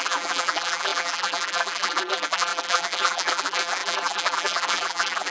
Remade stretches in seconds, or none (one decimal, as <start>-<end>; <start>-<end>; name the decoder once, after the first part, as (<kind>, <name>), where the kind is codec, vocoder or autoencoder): 0.0-5.3 (vocoder, BigVGAN v2)